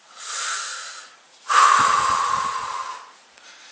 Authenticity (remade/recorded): remade